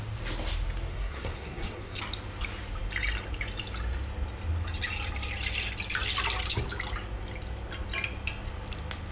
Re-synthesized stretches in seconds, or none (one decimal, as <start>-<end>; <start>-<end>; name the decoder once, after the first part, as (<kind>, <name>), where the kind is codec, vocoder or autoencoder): 0.9-2.0 (codec, SNAC)